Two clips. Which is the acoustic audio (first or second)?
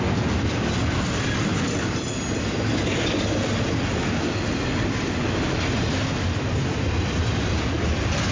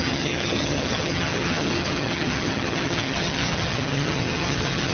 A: first